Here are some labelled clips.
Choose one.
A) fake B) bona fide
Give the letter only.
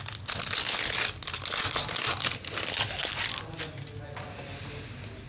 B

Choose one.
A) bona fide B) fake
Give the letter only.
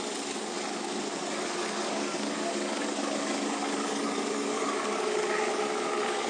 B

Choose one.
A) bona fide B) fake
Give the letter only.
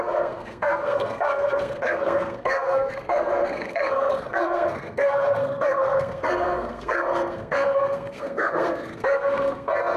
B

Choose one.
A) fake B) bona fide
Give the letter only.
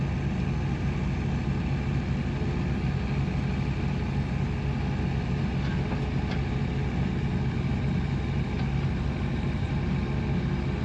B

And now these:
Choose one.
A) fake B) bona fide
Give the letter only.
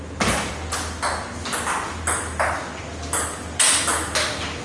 B